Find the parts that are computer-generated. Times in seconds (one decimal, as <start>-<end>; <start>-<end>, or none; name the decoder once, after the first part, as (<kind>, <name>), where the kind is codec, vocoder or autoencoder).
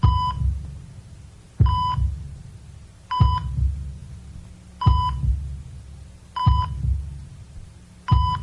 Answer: none